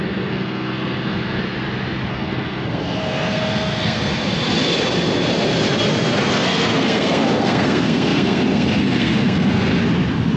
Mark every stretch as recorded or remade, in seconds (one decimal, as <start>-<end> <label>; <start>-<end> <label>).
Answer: 0.0-1.4 remade; 1.4-2.1 recorded; 2.1-4.1 remade; 4.1-6.3 recorded; 6.3-9.8 remade; 9.8-10.4 recorded